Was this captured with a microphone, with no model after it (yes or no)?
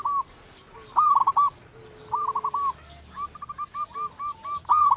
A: yes